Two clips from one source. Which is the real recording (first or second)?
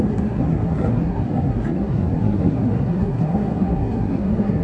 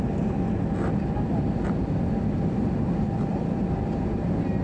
second